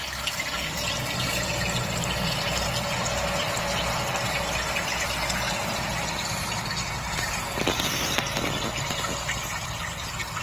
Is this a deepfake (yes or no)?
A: no